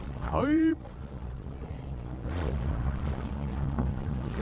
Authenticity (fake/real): fake